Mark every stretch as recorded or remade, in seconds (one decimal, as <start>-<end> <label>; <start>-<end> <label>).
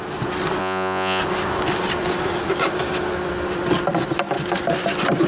0.0-0.6 recorded; 0.6-1.2 remade; 1.2-5.3 recorded